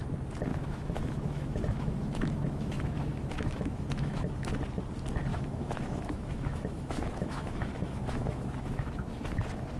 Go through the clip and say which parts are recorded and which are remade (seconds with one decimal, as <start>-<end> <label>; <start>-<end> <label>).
0.0-0.5 recorded; 0.5-4.3 remade; 4.3-5.3 recorded; 5.3-8.9 remade; 8.9-9.8 recorded